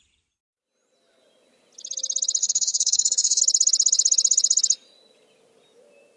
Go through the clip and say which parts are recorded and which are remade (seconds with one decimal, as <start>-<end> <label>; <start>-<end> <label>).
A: 0.0-2.4 recorded; 2.4-3.4 remade; 3.4-6.2 recorded